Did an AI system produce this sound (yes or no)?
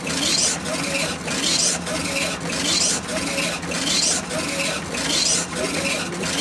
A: no